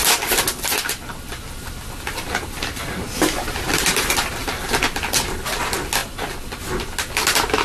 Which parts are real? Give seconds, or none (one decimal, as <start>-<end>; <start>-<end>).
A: 0.0-7.6